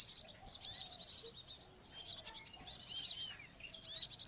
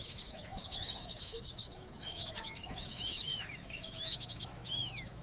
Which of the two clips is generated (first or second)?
second